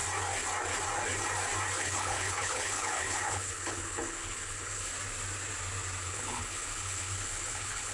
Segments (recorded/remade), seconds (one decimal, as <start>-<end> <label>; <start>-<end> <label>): 0.0-1.8 recorded; 1.8-4.9 remade; 4.9-6.0 recorded; 6.0-7.9 remade